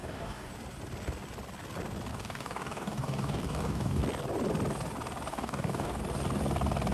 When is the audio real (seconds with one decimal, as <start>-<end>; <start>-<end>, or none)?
0.5-2.1; 4.0-5.3; 6.0-6.9